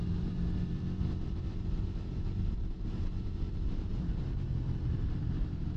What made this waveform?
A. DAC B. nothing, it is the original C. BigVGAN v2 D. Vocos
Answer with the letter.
C